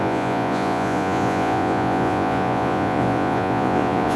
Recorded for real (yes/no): no